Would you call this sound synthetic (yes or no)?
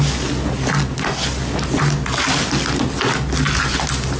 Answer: no